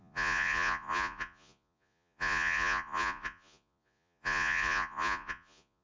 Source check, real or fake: fake